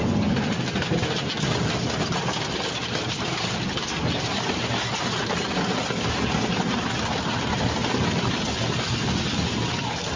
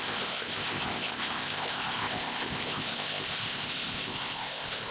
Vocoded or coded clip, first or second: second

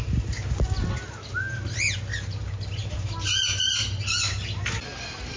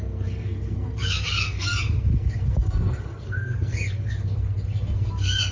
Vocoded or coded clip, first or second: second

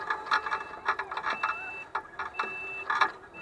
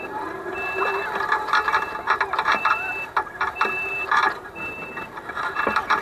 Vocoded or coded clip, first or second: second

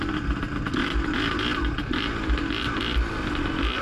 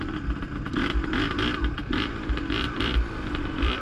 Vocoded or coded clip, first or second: second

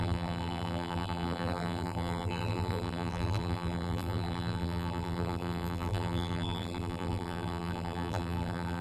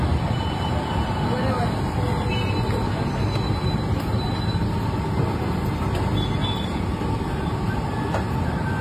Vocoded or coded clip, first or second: first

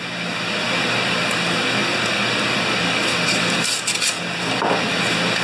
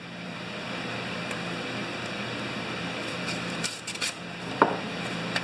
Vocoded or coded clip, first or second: second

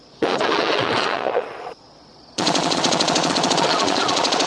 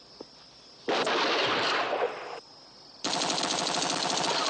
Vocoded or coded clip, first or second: first